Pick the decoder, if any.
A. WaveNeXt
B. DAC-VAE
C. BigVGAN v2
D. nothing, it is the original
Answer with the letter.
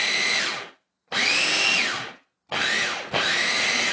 D